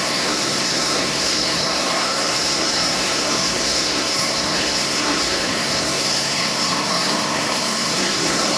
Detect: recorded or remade remade